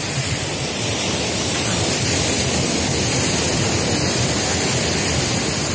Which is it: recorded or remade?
recorded